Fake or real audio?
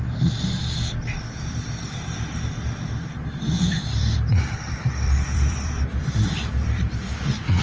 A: fake